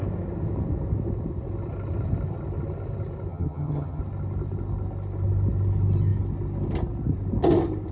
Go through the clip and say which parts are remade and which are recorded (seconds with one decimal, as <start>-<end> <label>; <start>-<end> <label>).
0.0-3.3 recorded; 3.3-4.0 remade; 4.0-7.9 recorded